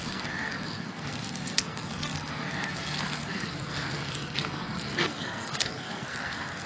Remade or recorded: remade